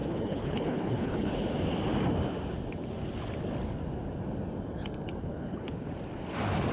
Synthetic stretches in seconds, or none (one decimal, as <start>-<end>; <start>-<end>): 0.0-1.3; 5.2-5.9